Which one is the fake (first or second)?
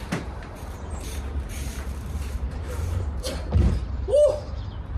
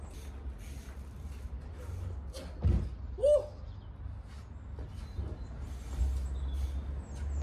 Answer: first